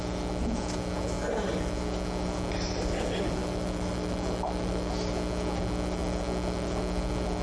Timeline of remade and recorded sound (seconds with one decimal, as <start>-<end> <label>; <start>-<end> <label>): 0.0-3.4 recorded; 3.4-4.9 remade; 4.9-7.4 recorded